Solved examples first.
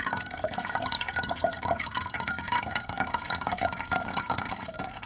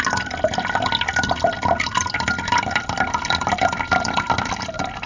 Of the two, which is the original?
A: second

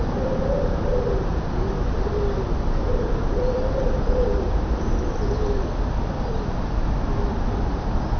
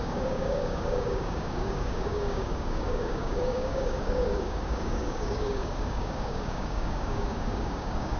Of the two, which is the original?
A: first